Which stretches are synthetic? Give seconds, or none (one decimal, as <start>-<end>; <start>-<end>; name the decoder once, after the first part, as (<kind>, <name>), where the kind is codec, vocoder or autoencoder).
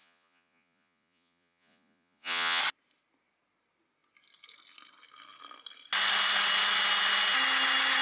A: 0.0-2.6 (vocoder, Vocos)